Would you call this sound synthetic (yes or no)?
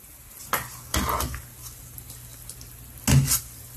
no